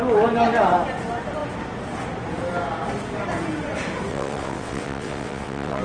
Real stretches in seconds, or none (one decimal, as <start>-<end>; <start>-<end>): 0.0-4.1